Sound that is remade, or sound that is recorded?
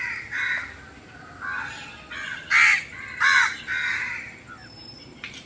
recorded